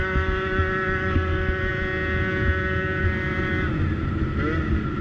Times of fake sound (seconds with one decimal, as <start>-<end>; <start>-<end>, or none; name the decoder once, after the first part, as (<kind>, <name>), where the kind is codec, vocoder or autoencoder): 1.7-3.0 (vocoder, Vocos)